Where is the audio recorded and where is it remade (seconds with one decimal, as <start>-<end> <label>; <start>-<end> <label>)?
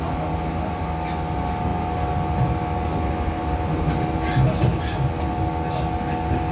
0.0-6.5 recorded